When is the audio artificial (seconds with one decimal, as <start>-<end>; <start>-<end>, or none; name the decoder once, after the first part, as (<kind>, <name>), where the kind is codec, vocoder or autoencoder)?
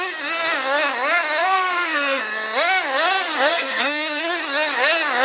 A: 1.4-2.2 (codec, SNAC); 3.5-4.2